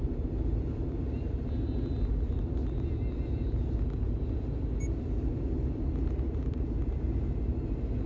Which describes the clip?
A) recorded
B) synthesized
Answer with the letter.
A